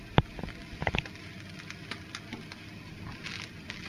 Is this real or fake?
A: real